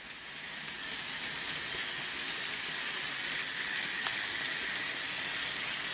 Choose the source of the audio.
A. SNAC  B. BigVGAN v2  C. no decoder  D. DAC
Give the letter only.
C